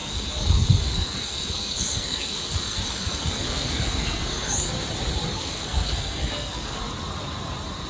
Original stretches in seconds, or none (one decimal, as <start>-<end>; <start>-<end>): 4.7-5.3; 6.8-7.9